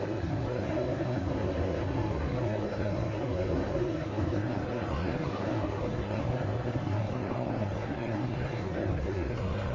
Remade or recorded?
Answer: remade